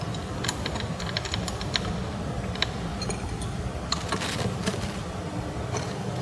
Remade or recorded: remade